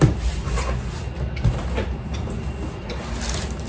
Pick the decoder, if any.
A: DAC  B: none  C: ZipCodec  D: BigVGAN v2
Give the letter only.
B